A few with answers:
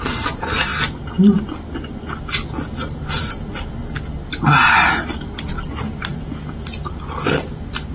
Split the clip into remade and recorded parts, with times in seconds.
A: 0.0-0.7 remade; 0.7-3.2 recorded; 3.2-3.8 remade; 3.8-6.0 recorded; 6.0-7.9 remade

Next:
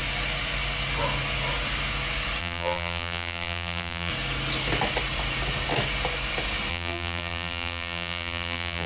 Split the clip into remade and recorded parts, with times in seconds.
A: 0.0-2.4 recorded; 2.4-4.1 remade; 4.1-6.7 recorded; 6.7-8.9 remade

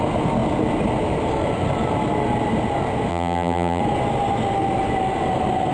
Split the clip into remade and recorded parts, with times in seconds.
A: 0.0-3.1 recorded; 3.1-3.8 remade; 3.8-5.7 recorded

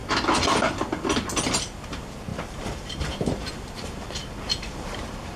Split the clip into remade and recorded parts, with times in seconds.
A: 0.0-1.8 recorded; 1.8-5.4 remade

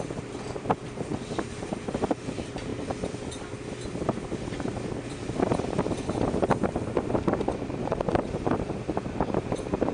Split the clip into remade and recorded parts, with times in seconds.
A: 0.0-2.7 remade; 2.7-7.4 recorded; 7.4-9.9 remade